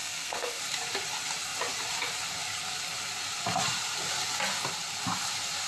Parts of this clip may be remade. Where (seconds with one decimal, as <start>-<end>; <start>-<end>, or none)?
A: 0.0-0.6